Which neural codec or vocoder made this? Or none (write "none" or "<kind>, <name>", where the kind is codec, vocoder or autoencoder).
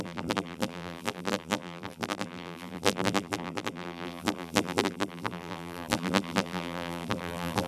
vocoder, BigVGAN v2